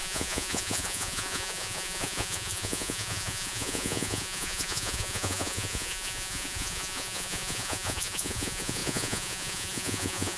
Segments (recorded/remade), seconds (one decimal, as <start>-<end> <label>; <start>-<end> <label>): 0.0-10.4 remade